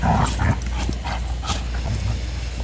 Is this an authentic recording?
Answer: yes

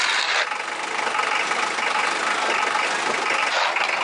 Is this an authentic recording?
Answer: yes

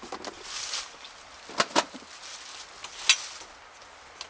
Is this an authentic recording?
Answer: yes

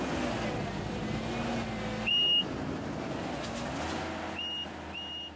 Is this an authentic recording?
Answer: yes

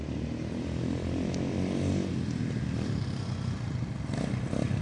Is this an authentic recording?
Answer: yes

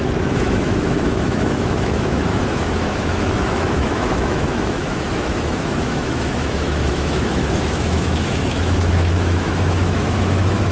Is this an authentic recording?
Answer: no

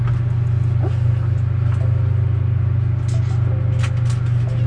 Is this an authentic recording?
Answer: yes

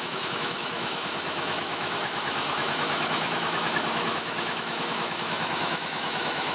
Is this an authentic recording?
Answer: no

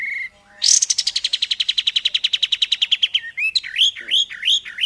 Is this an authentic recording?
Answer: yes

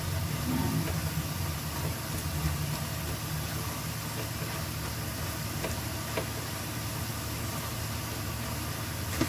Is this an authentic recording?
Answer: yes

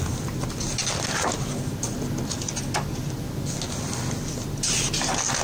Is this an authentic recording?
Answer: yes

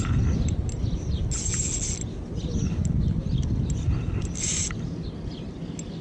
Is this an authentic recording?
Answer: yes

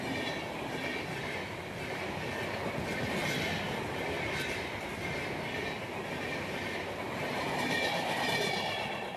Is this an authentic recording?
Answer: yes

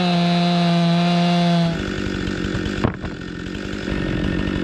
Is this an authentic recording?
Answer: yes